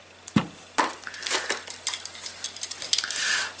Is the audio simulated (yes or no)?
no